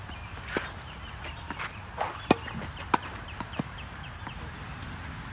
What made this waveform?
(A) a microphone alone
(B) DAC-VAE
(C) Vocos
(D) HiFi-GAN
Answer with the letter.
A